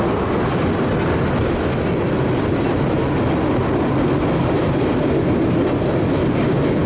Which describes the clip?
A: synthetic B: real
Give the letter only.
B